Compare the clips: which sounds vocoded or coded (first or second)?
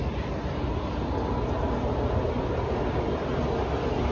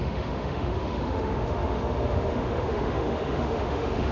second